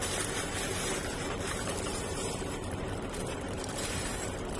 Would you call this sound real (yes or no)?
no